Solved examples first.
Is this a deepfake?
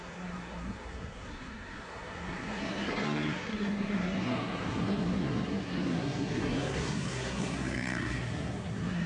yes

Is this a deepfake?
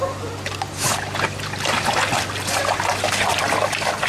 no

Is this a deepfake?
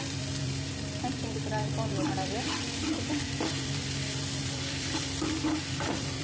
yes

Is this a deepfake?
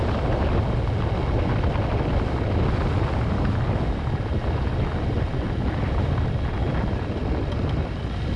no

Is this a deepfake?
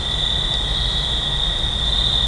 no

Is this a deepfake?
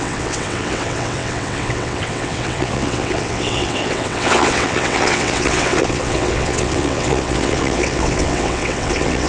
yes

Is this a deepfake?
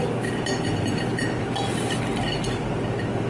no